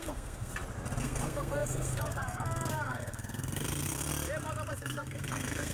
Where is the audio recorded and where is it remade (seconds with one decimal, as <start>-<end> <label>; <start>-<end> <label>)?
0.0-0.5 remade; 0.5-1.0 recorded; 1.0-4.1 remade; 4.1-4.7 recorded; 4.7-5.7 remade